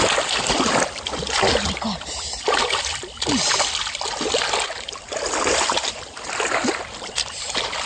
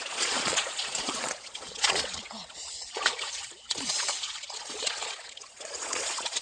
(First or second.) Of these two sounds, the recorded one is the first